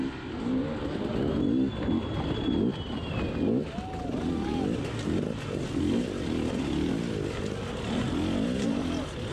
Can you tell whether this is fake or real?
real